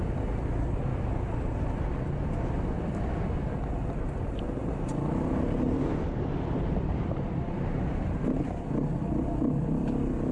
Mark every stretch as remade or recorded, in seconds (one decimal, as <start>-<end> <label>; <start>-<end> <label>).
0.0-0.9 recorded; 0.9-1.8 remade; 1.8-4.6 recorded; 4.6-8.6 remade; 8.6-10.3 recorded